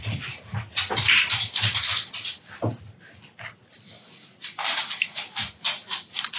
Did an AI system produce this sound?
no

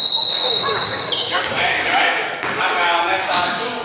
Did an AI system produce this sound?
yes